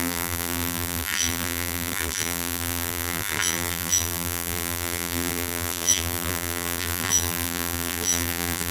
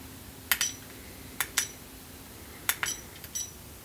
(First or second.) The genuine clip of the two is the second